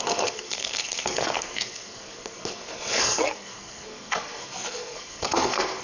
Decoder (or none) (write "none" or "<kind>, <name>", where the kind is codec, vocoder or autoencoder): codec, SNAC